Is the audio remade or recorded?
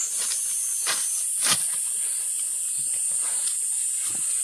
recorded